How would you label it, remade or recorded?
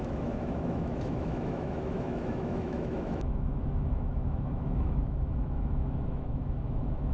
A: remade